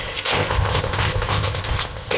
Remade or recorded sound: remade